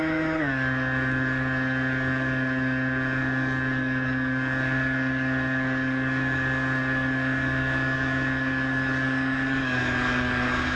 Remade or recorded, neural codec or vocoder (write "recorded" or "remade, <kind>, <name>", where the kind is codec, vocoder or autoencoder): remade, codec, DAC